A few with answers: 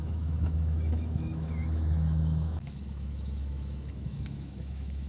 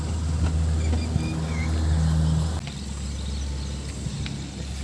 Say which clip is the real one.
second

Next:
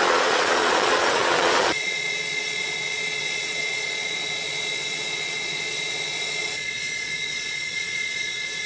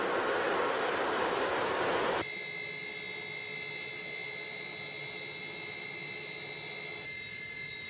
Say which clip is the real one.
second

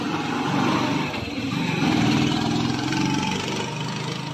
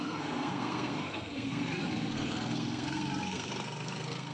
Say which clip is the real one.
first